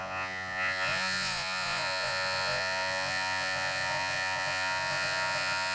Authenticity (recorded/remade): remade